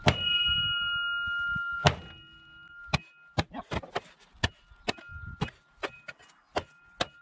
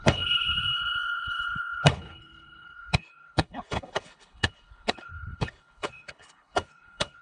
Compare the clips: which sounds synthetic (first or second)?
second